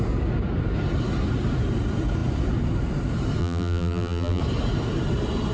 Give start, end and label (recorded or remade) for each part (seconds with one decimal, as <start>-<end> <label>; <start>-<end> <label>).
0.0-3.4 recorded; 3.4-4.4 remade; 4.4-5.5 recorded